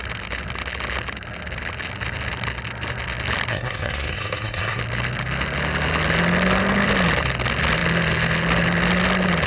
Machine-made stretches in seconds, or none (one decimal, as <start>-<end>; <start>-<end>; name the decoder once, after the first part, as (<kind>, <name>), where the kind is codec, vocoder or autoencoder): 3.5-4.8 (codec, SNAC)